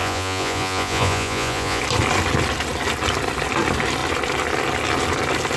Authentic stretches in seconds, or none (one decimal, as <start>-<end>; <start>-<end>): 1.8-5.6